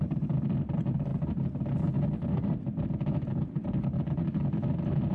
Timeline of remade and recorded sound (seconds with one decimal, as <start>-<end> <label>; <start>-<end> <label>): 0.0-5.1 recorded